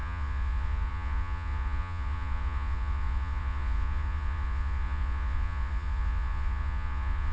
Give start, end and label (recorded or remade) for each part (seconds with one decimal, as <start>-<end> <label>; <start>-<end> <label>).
0.0-7.3 remade